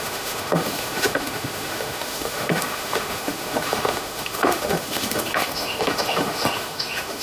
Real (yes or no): no